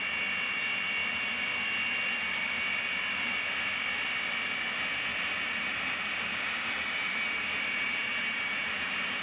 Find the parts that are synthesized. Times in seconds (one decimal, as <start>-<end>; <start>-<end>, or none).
5.1-9.2